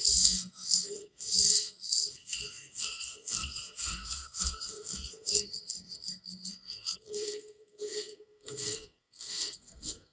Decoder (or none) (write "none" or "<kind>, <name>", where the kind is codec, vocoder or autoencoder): codec, SNAC